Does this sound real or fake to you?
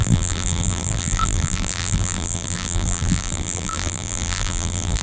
fake